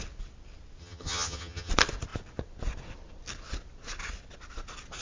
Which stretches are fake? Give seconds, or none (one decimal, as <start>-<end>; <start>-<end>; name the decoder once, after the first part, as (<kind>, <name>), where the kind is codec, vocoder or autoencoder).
0.8-1.7 (vocoder, HiFi-GAN)